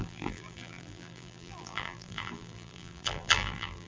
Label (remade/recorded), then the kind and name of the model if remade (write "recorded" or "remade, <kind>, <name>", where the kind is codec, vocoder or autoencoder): remade, vocoder, BigVGAN v2